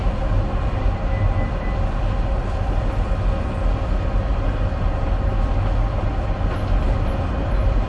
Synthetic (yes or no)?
no